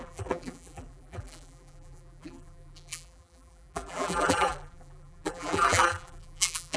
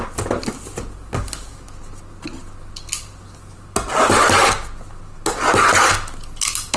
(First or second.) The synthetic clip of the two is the first